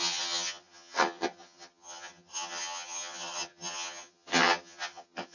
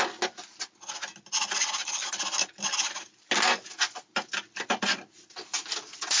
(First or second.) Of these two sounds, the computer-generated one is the first